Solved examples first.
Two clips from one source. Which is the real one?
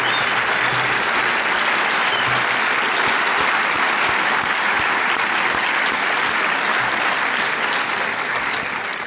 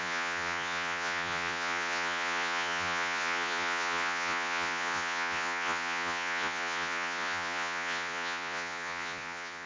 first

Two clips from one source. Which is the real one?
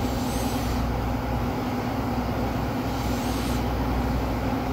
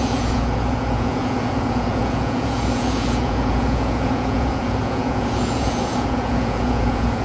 first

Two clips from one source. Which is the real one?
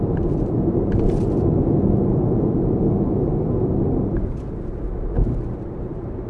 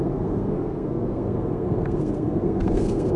first